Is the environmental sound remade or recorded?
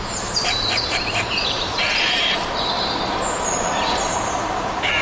remade